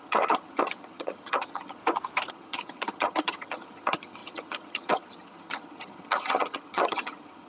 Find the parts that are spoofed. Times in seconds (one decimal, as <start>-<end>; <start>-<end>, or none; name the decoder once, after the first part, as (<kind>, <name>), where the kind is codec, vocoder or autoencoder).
0.0-1.8 (vocoder, HiFi-GAN); 2.3-7.5